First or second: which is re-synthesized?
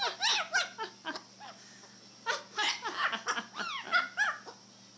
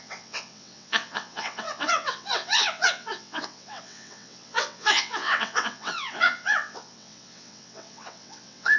second